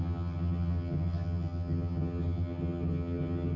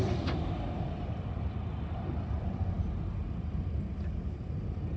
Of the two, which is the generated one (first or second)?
first